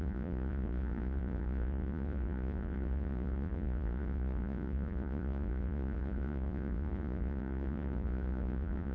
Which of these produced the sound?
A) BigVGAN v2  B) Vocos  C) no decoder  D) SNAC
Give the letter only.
B